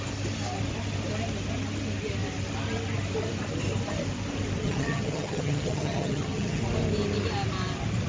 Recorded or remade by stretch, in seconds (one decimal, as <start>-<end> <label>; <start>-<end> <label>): 0.0-4.6 recorded; 4.6-6.6 remade; 6.6-8.1 recorded